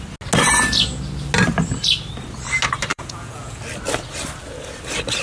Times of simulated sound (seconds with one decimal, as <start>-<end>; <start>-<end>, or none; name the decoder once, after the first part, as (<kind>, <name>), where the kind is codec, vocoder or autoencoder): 2.9-3.6 (vocoder, Vocos)